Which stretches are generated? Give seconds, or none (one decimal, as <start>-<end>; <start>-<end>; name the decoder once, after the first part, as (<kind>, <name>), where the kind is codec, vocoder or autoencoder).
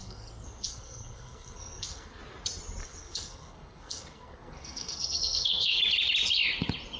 0.0-2.2 (codec, SNAC); 2.8-5.8